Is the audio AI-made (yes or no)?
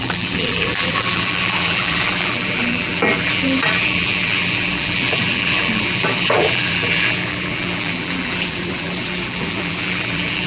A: yes